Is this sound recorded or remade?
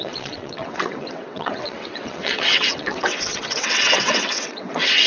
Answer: remade